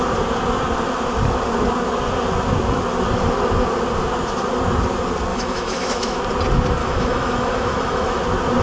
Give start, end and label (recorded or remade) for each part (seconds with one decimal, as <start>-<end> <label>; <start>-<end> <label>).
0.0-5.3 recorded; 5.3-6.2 remade; 6.2-6.8 recorded; 6.8-8.2 remade; 8.2-8.6 recorded